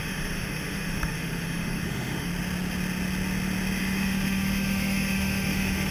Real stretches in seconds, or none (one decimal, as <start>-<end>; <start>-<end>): 2.3-3.8